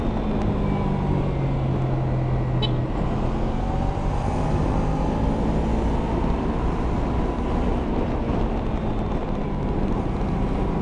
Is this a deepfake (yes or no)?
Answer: no